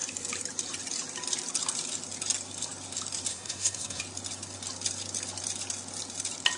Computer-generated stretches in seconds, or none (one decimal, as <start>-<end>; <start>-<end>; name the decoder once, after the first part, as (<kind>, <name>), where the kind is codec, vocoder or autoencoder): 3.3-4.0 (codec, SNAC)

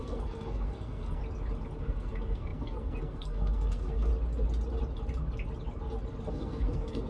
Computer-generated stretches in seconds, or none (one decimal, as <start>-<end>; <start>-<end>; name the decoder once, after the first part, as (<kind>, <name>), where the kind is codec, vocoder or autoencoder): 0.0-1.2 (codec, SNAC); 1.8-4.1; 6.3-7.1